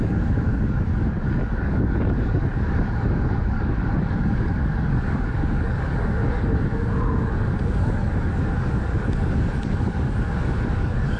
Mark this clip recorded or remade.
remade